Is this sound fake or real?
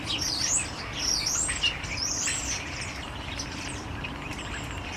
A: real